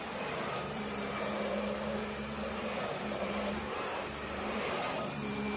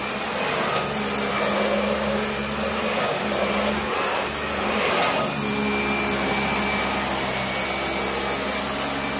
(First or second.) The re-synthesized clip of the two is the first